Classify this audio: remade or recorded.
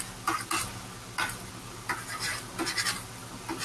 recorded